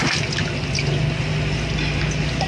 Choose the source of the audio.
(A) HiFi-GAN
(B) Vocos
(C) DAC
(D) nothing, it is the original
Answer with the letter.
D